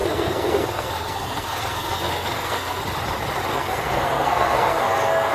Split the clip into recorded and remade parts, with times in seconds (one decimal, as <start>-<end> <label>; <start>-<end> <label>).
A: 0.0-2.8 remade; 2.8-3.5 recorded; 3.5-5.3 remade